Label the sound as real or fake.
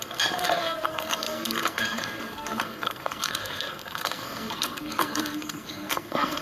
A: fake